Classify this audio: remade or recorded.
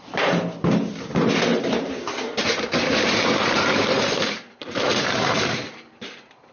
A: remade